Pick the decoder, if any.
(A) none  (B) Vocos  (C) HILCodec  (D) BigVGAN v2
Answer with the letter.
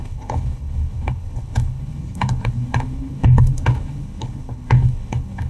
C